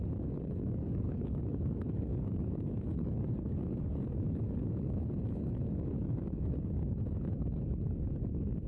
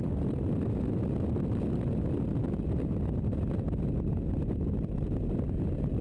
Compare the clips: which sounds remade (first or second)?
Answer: first